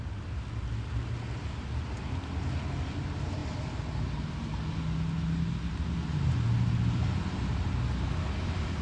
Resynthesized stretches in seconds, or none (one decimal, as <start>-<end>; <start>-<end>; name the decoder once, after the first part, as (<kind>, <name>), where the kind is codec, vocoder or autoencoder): none